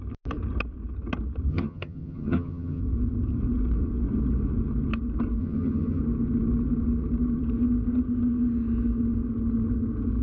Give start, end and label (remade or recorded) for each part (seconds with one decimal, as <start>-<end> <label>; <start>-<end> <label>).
0.0-1.5 recorded; 1.5-2.8 remade; 2.8-5.4 recorded; 5.4-6.0 remade; 6.0-10.2 recorded